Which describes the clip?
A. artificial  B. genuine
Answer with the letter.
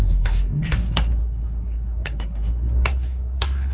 A